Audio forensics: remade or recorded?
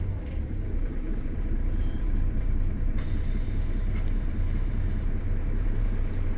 remade